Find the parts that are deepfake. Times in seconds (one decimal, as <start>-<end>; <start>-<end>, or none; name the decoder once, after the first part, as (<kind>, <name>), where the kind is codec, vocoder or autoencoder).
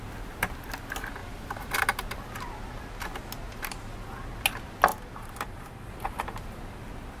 1.2-1.8 (vocoder, BigVGAN v2); 3.5-4.0; 4.9-5.9